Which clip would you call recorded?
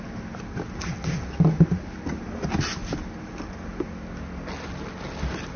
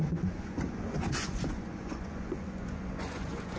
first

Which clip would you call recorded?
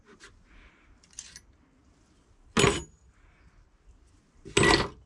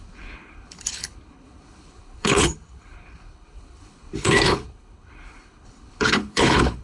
first